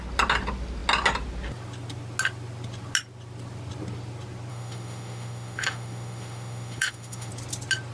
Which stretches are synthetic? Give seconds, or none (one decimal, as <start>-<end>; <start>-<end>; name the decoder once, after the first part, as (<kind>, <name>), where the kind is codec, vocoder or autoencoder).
4.5-7.3 (autoencoder, DAC-VAE)